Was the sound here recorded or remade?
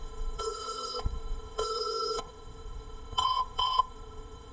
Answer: remade